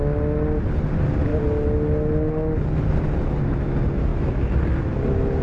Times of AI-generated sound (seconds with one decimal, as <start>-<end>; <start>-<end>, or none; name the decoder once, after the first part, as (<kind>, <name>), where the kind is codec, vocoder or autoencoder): none